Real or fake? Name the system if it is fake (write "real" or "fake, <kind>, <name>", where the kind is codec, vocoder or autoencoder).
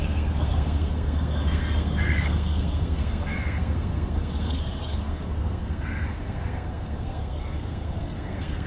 fake, codec, SNAC